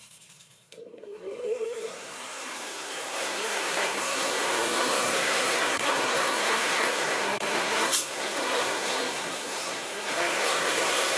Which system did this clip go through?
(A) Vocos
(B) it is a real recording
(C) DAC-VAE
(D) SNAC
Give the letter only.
D